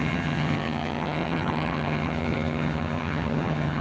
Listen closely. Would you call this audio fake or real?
fake